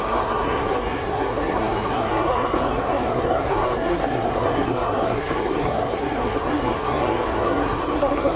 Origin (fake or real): fake